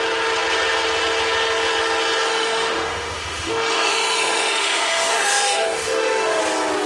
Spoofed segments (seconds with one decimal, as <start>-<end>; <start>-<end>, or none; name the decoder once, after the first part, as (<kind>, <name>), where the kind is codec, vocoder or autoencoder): 2.3-6.4 (autoencoder, DAC-VAE)